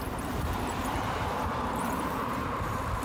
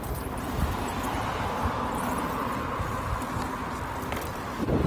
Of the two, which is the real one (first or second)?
second